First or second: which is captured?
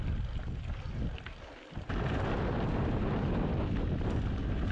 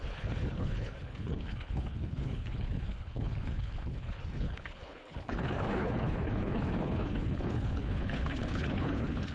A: first